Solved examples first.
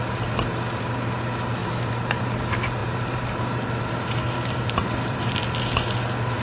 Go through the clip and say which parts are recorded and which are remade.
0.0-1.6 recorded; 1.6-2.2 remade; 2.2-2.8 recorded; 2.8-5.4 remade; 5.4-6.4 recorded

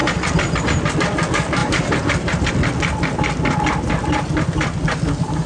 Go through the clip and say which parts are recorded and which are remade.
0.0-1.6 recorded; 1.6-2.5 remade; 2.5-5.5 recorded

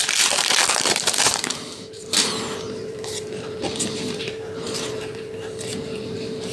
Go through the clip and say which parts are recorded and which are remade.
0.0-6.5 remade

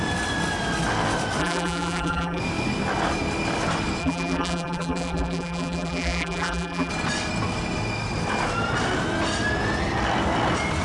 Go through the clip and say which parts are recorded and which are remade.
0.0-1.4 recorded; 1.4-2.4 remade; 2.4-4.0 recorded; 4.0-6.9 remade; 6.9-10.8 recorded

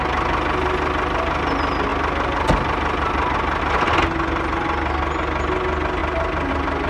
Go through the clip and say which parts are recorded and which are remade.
0.0-6.9 recorded

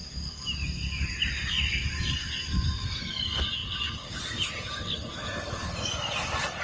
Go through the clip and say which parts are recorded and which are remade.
0.0-3.6 recorded; 3.6-4.7 remade; 4.7-6.6 recorded